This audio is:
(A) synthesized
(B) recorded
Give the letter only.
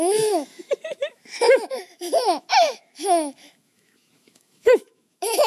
A